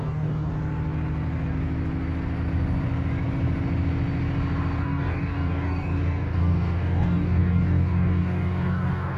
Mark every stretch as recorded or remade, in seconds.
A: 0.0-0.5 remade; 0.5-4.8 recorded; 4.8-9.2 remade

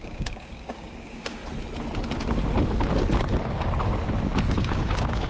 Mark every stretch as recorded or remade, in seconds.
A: 0.0-1.4 remade; 1.4-4.6 recorded; 4.6-5.3 remade

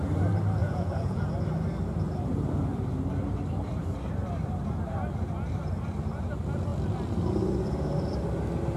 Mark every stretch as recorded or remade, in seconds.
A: 0.0-0.6 recorded; 0.6-1.3 remade; 1.3-8.8 recorded

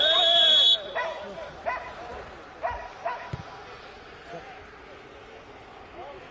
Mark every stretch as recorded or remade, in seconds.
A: 0.0-6.3 recorded

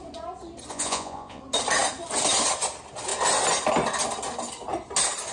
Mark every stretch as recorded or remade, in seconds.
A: 0.0-0.7 recorded; 0.7-1.4 remade; 1.4-5.3 recorded

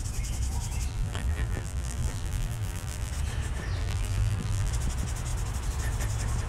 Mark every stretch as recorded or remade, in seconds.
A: 0.0-0.9 recorded; 0.9-3.1 remade; 3.1-3.8 recorded; 3.8-4.7 remade; 4.7-6.5 recorded

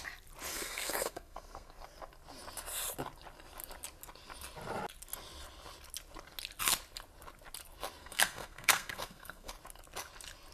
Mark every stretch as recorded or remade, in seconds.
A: 0.0-0.5 recorded; 0.5-1.7 remade; 1.7-8.0 recorded; 8.0-9.5 remade; 9.5-10.5 recorded

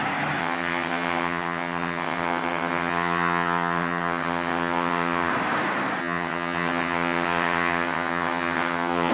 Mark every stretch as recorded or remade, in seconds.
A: 0.0-0.4 recorded; 0.4-5.3 remade; 5.3-6.0 recorded; 6.0-9.1 remade